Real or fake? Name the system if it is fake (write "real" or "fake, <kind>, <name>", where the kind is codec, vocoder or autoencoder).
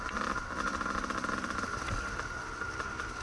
real